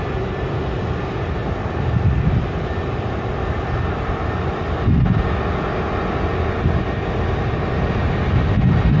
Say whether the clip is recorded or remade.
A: recorded